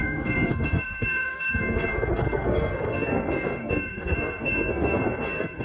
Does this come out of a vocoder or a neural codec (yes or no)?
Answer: yes